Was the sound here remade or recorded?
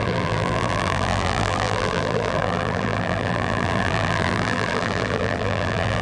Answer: remade